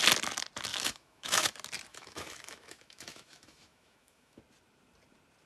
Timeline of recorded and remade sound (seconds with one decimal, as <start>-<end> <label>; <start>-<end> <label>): 0.0-0.7 recorded; 0.7-1.5 remade; 1.5-1.9 recorded; 1.9-4.4 remade; 4.4-5.5 recorded